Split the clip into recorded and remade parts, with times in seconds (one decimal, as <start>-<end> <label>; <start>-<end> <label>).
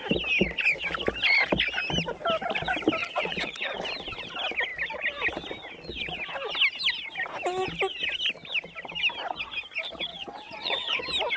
0.0-3.0 recorded; 3.0-3.8 remade; 3.8-10.1 recorded; 10.1-11.0 remade; 11.0-11.4 recorded